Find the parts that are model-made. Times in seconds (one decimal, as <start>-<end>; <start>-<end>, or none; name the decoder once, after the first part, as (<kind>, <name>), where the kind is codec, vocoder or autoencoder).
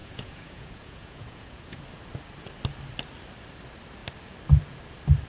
0.0-1.8 (vocoder, Vocos)